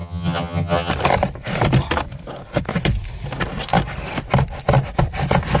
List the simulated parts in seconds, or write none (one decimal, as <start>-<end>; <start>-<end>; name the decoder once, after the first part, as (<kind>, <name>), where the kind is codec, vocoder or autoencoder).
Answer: 0.0-0.9 (vocoder, HiFi-GAN)